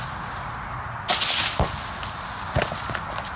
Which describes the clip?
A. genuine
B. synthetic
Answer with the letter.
A